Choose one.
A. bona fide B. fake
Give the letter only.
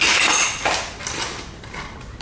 A